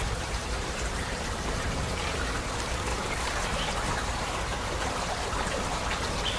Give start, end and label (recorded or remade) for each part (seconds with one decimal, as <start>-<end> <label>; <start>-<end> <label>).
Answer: 0.0-0.4 recorded; 0.4-2.2 remade; 2.2-2.9 recorded; 2.9-3.7 remade; 3.7-6.4 recorded